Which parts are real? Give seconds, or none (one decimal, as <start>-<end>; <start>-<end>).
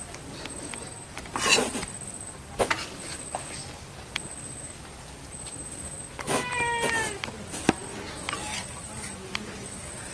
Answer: 0.0-10.1